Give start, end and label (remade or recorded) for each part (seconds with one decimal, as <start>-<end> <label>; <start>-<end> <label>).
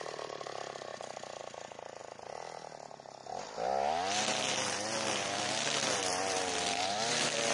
0.0-2.0 remade; 2.0-5.2 recorded; 5.2-7.5 remade